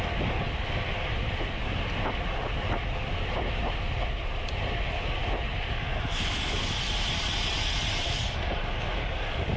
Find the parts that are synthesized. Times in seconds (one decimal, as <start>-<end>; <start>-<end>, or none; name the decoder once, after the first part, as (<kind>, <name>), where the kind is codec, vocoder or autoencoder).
none